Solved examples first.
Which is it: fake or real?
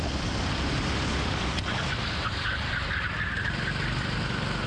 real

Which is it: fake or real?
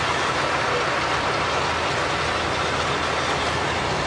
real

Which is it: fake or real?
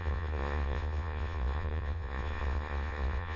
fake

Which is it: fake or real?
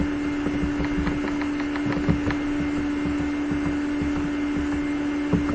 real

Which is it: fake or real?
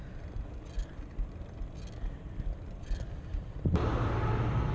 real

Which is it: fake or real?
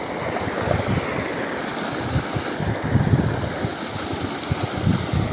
real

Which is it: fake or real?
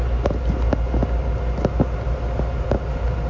real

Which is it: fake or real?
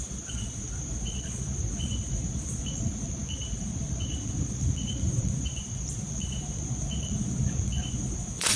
fake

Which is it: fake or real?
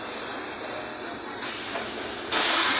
real